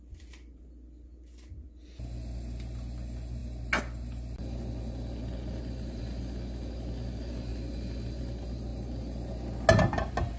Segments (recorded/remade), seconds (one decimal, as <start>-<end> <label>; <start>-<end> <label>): 0.0-10.4 recorded